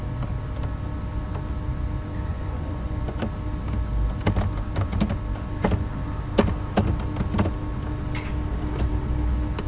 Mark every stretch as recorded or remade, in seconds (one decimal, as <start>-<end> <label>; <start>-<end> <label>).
0.0-2.3 recorded; 2.3-3.2 remade; 3.2-9.7 recorded